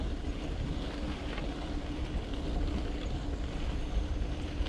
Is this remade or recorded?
recorded